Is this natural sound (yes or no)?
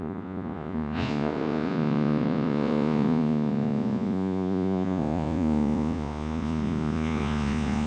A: no